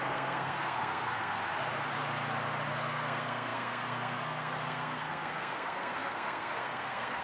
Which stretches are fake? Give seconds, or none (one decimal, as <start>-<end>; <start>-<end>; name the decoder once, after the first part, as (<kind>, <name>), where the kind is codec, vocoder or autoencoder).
0.0-1.4 (codec, SNAC); 2.7-7.2